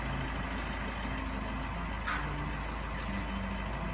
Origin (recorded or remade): recorded